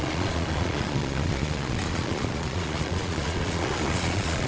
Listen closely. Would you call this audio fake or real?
fake